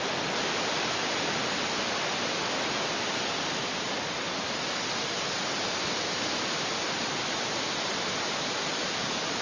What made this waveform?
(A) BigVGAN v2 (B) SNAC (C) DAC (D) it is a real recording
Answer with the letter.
D